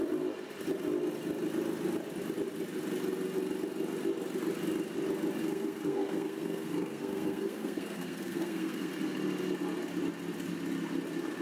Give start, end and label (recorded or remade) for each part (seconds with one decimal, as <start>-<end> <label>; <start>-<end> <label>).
0.0-5.4 recorded; 5.4-8.9 remade; 8.9-11.4 recorded